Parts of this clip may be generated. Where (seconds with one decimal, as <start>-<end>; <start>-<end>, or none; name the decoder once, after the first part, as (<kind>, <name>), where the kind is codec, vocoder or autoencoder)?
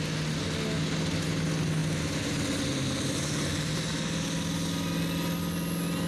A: none